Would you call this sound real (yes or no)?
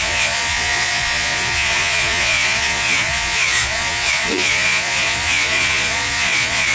no